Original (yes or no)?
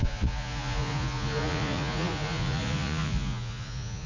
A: no